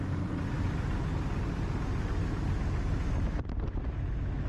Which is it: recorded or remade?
recorded